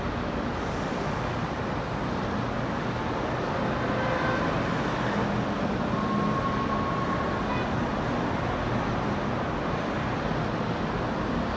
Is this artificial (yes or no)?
no